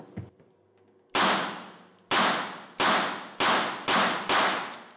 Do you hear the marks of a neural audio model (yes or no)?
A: no